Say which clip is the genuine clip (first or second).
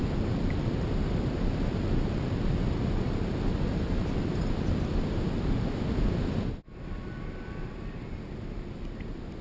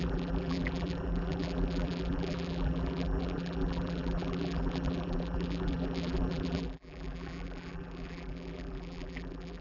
first